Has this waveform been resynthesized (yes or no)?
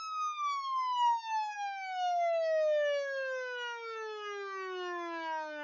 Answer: no